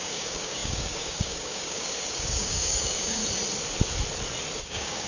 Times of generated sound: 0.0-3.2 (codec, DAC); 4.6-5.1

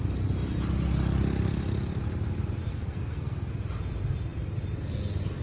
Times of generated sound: 2.7-3.5 (codec, SNAC)

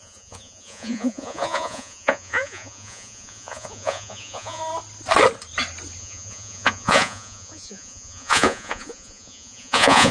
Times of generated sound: 0.0-4.6 (vocoder, Vocos); 6.0-10.1

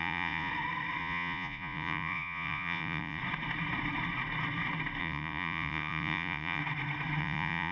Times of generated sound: 0.0-0.5 (vocoder, Vocos); 1.0-3.2; 5.0-6.6; 7.2-7.7

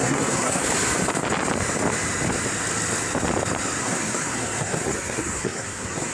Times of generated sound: 0.0-0.6 (codec, SNAC); 3.8-6.1

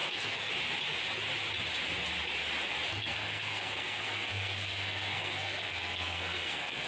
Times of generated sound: 0.0-0.5 (codec, SNAC); 2.9-6.9

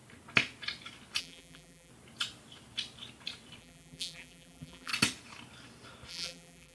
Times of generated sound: 1.2-1.9 (vocoder, BigVGAN v2); 3.6-4.9; 6.1-6.7

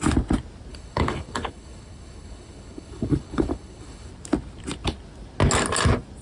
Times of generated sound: 0.7-4.1 (codec, HILCodec)